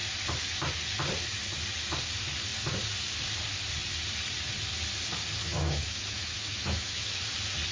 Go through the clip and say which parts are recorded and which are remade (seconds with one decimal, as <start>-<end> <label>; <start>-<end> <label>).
0.0-5.4 recorded; 5.4-7.2 remade; 7.2-7.7 recorded